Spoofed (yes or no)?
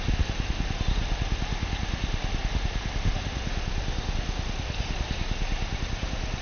no